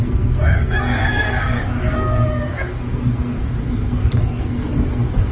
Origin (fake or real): fake